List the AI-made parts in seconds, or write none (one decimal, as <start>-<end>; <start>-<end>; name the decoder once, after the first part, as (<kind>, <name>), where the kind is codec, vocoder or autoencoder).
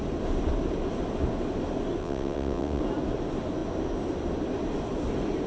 2.0-2.8 (vocoder, WaveNeXt)